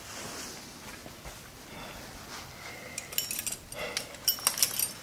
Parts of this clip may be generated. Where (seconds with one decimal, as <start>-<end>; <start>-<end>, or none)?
none